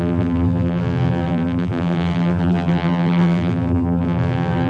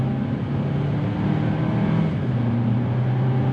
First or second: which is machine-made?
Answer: first